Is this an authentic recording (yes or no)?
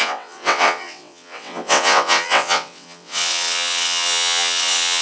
no